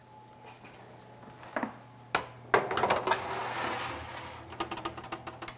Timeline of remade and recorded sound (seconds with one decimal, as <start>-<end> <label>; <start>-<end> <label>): 0.0-5.6 recorded